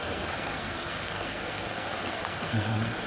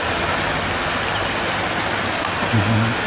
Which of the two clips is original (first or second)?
second